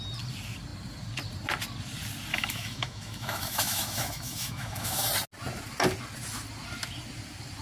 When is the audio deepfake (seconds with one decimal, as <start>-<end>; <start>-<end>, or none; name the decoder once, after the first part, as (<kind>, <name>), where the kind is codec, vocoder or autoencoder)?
2.3-5.1 (autoencoder, DAC-VAE)